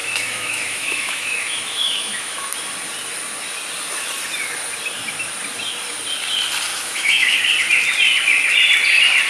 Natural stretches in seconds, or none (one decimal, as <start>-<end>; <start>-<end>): 2.5-6.7; 7.4-9.3